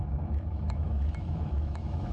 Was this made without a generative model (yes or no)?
no